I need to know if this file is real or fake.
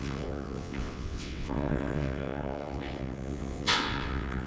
fake